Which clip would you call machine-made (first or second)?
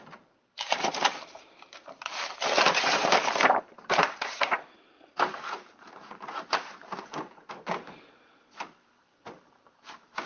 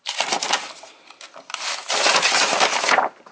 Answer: first